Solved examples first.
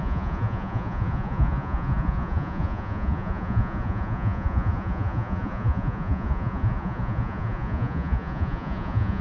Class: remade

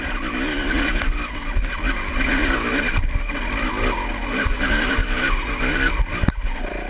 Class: recorded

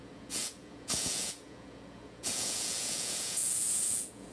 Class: remade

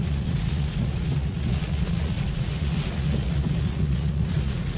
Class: remade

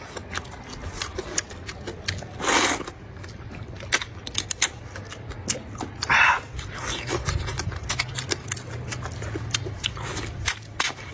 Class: recorded